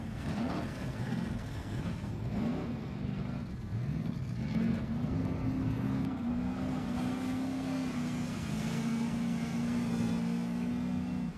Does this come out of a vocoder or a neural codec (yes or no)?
yes